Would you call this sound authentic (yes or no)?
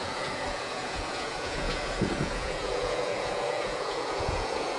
no